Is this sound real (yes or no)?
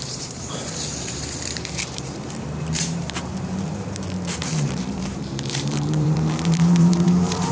no